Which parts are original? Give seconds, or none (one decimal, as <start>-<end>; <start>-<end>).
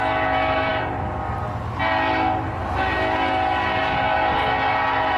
0.0-5.2